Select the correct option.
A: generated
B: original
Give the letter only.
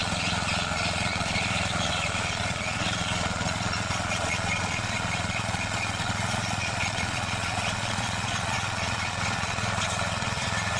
A